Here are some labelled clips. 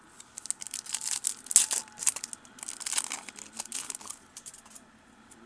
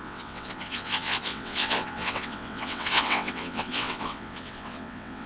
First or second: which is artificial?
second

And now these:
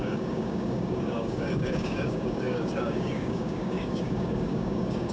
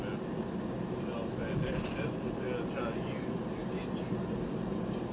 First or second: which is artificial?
first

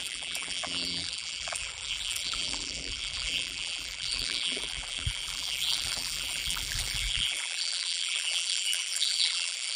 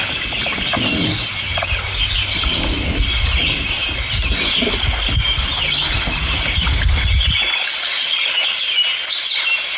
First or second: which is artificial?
first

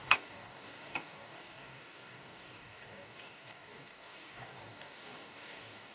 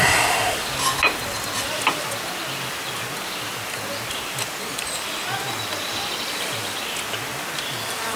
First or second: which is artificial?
first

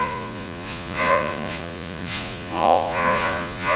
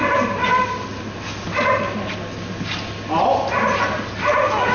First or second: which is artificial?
first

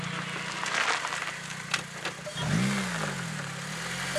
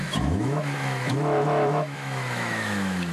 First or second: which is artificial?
second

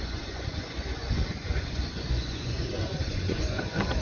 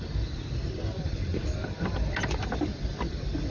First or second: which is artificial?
first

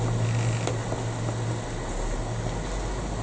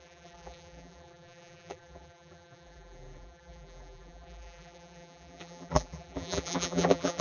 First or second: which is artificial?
second